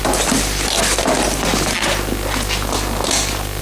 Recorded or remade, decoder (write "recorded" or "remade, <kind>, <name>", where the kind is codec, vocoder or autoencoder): recorded